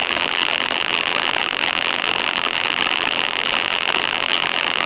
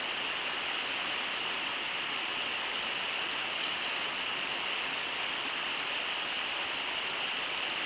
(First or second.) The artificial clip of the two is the first